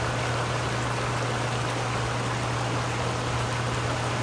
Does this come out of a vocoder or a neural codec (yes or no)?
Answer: no